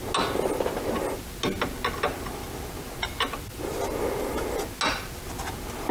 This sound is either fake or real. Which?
real